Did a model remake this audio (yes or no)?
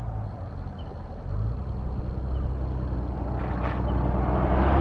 no